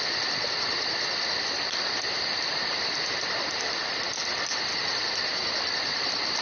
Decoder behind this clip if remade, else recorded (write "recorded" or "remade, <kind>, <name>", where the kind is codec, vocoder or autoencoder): recorded